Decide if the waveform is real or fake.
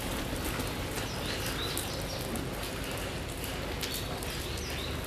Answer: real